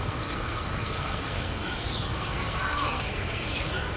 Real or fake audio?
fake